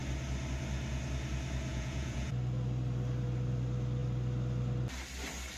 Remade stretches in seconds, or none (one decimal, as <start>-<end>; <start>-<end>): 1.7-2.3